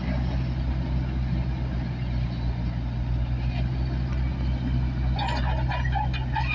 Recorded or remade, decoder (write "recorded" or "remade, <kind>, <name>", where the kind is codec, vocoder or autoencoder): recorded